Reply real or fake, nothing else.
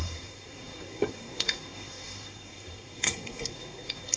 fake